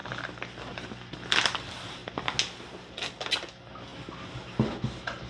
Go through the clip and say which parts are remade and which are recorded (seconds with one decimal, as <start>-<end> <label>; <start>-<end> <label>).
0.0-5.3 recorded